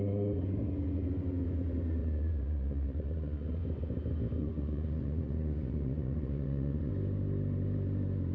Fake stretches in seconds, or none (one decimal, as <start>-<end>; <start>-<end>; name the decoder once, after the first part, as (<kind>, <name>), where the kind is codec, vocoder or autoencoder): 2.0-3.6 (vocoder, Vocos); 4.4-6.9